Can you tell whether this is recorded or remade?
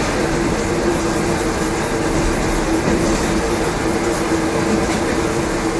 recorded